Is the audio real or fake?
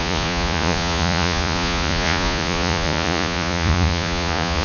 fake